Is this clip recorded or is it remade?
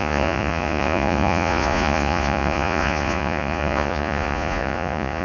remade